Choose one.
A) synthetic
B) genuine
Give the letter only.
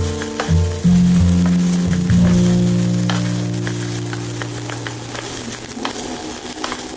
B